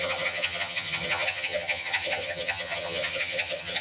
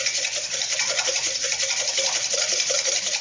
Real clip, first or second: second